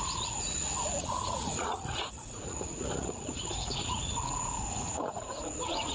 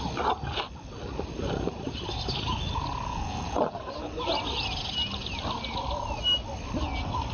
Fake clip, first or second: first